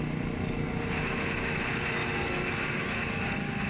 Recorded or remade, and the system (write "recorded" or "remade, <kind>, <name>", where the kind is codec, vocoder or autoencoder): recorded